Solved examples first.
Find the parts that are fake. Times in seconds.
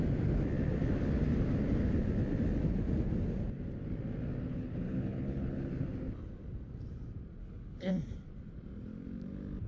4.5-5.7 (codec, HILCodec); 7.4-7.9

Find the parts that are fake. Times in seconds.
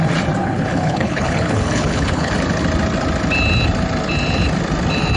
0.4-2.3 (codec, HILCodec)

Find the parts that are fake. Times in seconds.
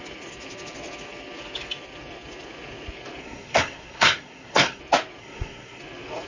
3.2-4.8 (codec, SNAC); 5.2-5.8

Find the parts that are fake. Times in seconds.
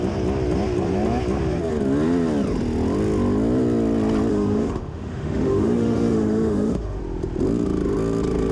4.3-7.0 (autoencoder, DAC-VAE)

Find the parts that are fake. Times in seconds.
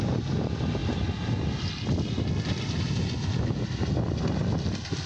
none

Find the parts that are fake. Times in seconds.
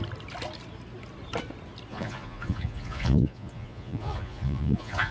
1.9-5.1 (vocoder, Vocos)